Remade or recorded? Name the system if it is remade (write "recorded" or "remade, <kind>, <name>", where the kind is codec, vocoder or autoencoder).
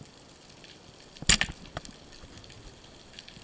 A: recorded